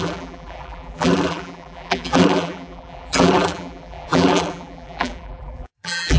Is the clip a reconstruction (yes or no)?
yes